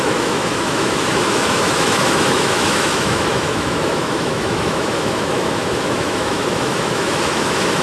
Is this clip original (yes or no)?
no